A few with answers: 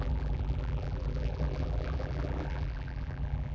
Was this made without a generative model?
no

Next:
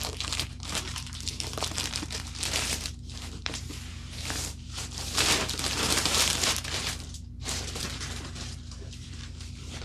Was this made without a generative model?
no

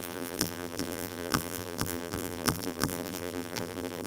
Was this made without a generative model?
no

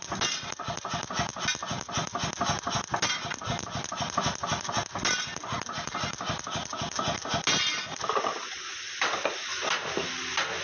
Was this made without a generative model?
yes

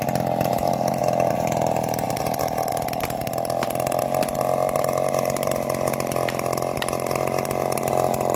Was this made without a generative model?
yes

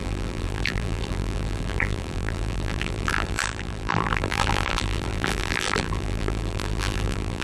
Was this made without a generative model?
no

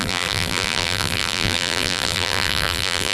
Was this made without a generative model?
no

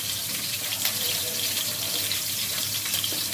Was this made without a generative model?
no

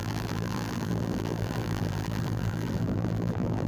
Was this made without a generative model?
no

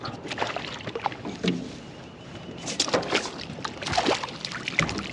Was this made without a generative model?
yes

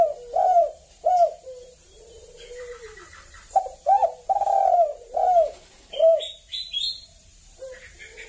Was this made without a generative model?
no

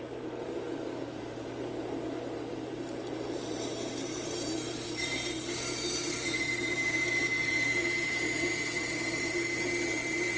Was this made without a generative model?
no